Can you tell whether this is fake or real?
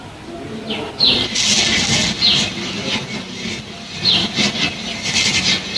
real